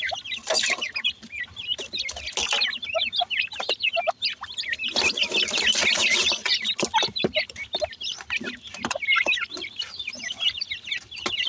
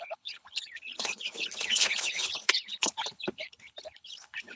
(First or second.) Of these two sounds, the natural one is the first